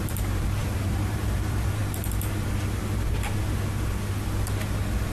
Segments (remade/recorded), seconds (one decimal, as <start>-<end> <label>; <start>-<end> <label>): 0.0-1.8 remade; 1.8-5.1 recorded

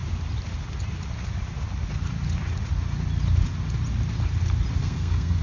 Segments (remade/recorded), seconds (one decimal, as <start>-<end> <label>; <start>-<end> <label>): 0.0-4.8 recorded; 4.8-5.4 remade